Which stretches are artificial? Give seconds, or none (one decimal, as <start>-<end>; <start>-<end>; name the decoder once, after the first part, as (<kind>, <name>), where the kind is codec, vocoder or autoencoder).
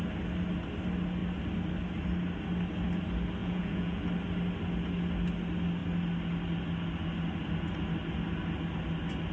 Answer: 3.4-4.0 (vocoder, Vocos)